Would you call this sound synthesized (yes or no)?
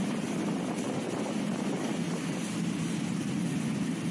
no